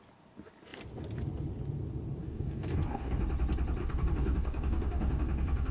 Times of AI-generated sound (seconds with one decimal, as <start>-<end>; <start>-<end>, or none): 2.2-3.2; 3.8-5.7